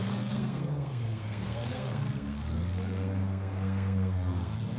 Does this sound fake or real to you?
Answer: fake